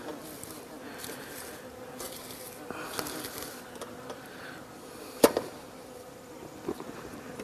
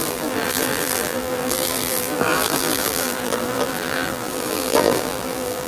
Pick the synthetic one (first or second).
second